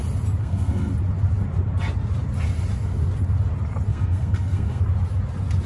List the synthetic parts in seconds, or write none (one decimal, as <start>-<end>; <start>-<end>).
0.4-0.9; 3.9-4.8